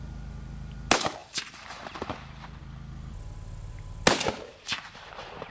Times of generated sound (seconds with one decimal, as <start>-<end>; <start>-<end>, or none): 1.2-2.6; 4.5-5.5